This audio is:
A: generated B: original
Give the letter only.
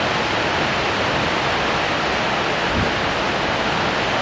B